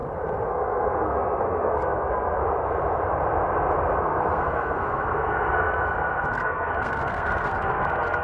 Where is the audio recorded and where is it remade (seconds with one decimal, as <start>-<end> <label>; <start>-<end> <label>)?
0.0-0.5 recorded; 0.5-2.4 remade; 2.4-4.0 recorded; 4.0-8.2 remade